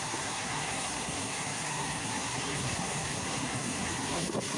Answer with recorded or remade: remade